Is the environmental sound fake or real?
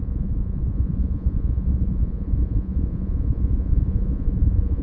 fake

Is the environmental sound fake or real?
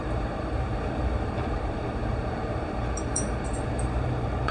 fake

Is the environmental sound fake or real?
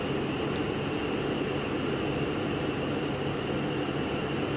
real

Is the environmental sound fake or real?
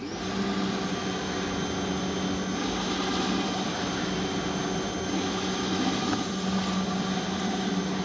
real